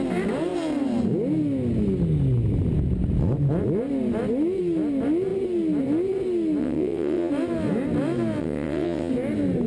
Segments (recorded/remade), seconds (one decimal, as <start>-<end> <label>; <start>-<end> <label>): 0.0-6.6 recorded; 6.6-7.3 remade; 7.3-8.4 recorded; 8.4-9.1 remade; 9.1-9.7 recorded